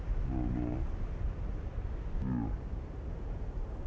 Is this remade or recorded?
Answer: recorded